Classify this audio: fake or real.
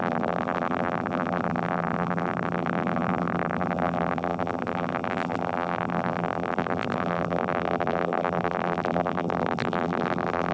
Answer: fake